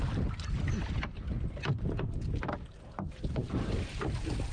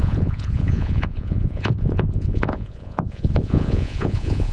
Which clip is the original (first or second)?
first